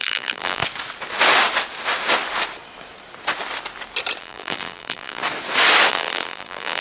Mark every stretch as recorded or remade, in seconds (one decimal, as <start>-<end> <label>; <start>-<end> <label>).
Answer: 0.0-0.6 remade; 0.6-4.2 recorded; 4.2-5.2 remade; 5.2-5.9 recorded; 5.9-6.8 remade